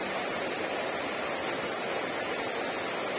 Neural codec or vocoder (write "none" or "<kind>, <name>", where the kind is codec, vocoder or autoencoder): none